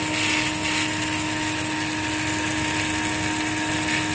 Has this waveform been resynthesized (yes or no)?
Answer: no